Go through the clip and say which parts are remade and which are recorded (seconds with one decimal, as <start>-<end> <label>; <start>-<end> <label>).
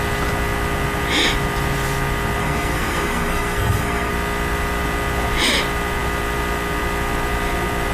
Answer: 0.0-2.4 recorded; 2.4-4.1 remade; 4.1-7.9 recorded